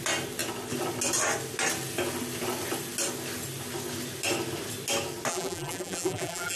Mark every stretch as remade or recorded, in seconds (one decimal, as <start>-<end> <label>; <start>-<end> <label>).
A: 0.0-5.3 recorded; 5.3-6.6 remade

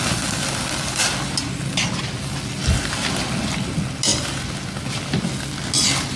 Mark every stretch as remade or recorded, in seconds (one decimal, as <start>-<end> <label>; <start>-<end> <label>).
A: 0.0-6.2 recorded

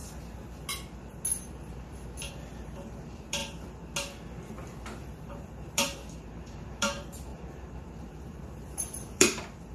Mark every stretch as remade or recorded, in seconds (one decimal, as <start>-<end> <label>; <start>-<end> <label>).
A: 0.0-2.3 recorded; 2.3-3.4 remade; 3.4-5.0 recorded; 5.0-9.7 remade

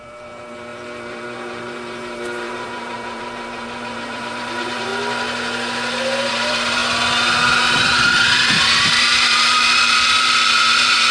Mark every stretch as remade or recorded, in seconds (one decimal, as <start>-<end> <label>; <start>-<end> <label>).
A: 0.0-4.9 remade; 4.9-6.3 recorded; 6.3-6.8 remade; 6.8-7.8 recorded; 7.8-11.1 remade

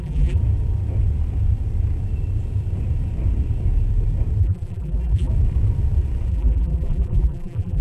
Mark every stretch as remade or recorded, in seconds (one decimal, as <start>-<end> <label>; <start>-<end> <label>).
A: 0.0-0.4 remade; 0.4-4.4 recorded; 4.4-5.3 remade; 5.3-6.3 recorded; 6.3-7.8 remade

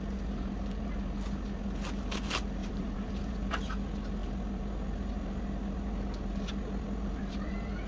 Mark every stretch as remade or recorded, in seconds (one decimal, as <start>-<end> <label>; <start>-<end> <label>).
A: 0.0-2.6 recorded; 2.6-3.1 remade; 3.1-7.9 recorded

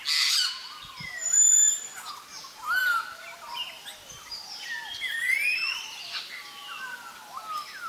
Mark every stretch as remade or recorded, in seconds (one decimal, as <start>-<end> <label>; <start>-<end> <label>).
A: 0.0-0.6 recorded; 0.6-2.1 remade; 2.1-2.8 recorded; 2.8-7.2 remade; 7.2-7.9 recorded